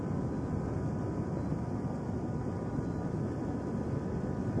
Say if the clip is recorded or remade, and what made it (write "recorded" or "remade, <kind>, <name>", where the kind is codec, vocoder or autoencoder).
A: remade, vocoder, BigVGAN v2